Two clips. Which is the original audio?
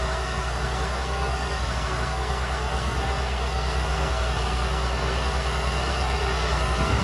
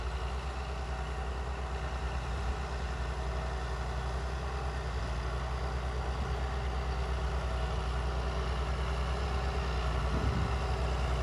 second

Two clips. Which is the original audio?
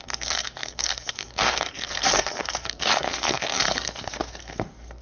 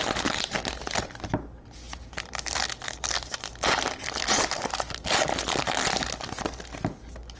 second